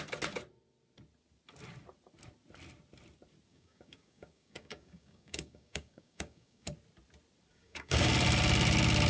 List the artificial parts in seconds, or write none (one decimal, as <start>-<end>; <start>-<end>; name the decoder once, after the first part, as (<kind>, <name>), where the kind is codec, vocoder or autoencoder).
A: 3.5-6.7 (codec, DAC); 7.5-8.1